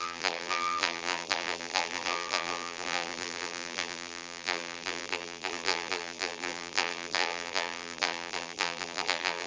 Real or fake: fake